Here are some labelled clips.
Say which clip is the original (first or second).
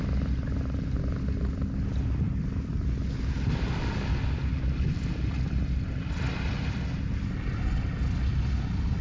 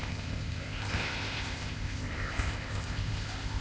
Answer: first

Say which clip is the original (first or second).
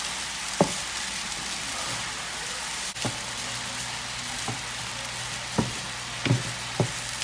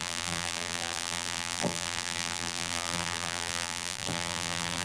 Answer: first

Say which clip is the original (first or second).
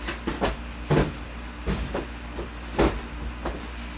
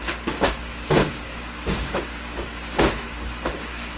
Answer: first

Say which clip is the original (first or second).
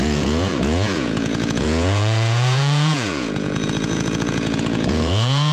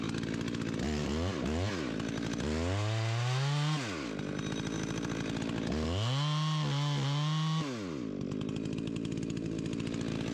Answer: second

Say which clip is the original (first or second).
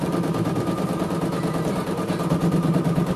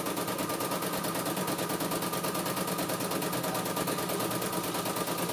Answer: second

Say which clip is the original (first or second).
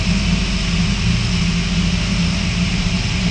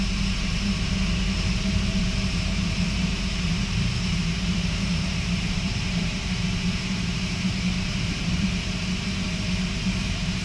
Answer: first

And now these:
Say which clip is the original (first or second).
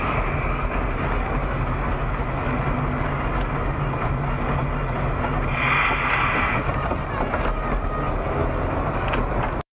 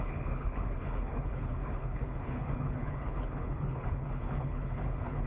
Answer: first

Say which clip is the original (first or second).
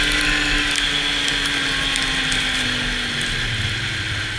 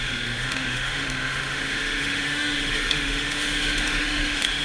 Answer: first